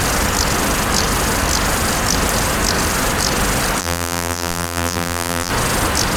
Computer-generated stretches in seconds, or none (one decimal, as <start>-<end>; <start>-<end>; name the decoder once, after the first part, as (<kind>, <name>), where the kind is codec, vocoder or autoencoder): 3.8-5.5 (vocoder, BigVGAN v2)